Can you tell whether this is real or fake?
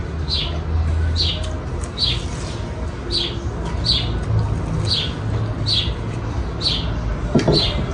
real